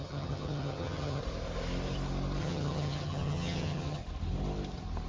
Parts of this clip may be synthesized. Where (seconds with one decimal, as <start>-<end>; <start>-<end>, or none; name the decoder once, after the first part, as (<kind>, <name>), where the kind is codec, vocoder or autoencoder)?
0.0-1.2 (vocoder, HiFi-GAN); 2.4-4.0